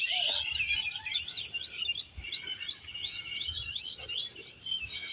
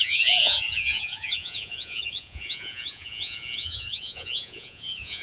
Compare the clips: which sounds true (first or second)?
first